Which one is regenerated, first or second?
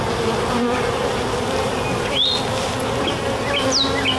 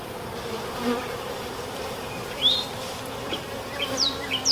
second